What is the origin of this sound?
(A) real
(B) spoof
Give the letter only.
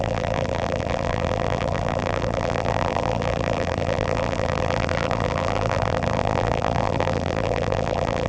B